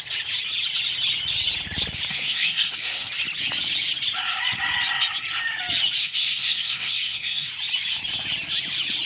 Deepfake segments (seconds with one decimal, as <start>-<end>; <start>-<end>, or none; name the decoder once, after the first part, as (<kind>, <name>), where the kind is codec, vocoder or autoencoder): 2.1-3.1 (codec, SNAC); 6.0-7.5